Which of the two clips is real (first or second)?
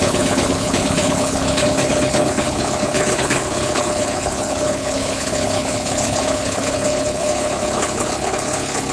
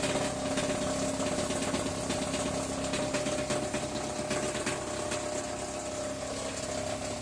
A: second